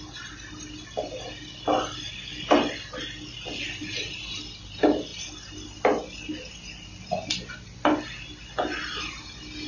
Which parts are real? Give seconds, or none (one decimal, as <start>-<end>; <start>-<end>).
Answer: 0.0-9.7